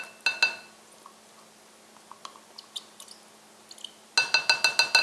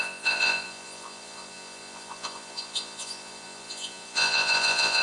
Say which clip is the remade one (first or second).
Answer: second